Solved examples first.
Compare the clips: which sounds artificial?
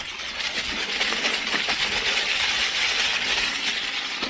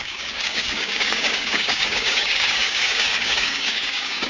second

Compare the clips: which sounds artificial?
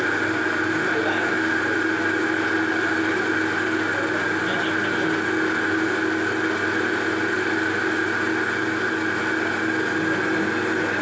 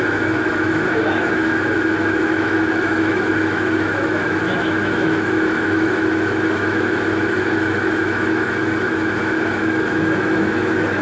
second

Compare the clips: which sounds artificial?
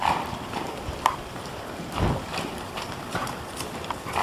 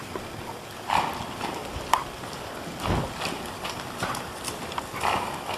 first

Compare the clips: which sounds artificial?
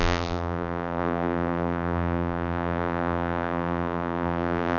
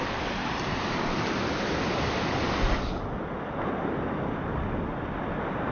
first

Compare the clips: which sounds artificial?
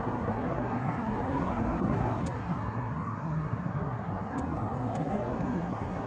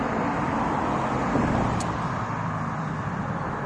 first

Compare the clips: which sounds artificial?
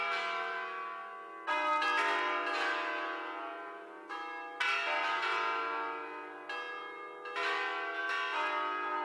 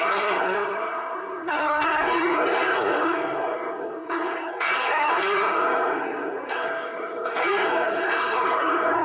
second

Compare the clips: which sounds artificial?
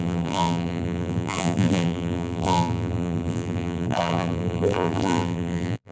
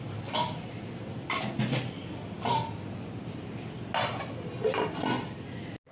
first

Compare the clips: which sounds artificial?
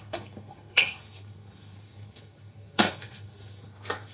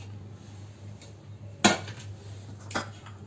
first